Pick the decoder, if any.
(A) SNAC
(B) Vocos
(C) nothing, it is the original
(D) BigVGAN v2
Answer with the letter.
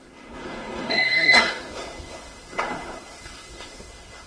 A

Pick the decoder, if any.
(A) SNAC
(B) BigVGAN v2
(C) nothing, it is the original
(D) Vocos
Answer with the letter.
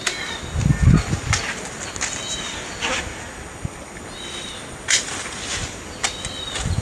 C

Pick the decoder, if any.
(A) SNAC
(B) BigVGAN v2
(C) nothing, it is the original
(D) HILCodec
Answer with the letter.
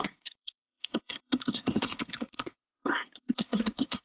A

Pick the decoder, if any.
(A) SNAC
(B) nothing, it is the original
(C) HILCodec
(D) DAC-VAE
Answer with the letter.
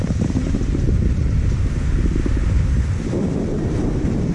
B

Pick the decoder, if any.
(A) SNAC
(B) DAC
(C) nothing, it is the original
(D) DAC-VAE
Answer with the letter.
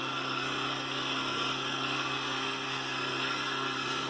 A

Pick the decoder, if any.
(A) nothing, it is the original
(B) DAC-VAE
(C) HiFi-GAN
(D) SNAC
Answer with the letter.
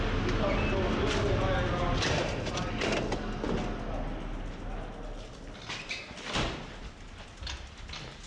A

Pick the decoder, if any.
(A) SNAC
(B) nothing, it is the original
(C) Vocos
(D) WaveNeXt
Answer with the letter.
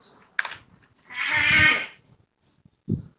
B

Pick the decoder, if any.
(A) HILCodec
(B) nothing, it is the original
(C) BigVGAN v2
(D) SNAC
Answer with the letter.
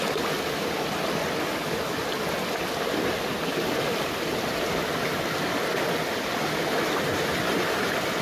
B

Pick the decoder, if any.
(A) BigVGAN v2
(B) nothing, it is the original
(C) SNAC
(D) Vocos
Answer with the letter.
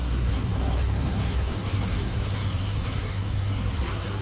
C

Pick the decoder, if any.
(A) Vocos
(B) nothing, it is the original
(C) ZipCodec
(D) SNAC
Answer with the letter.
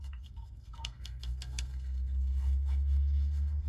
D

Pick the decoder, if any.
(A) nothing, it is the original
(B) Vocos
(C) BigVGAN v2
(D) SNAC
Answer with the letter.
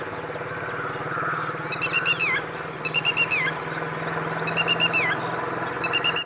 A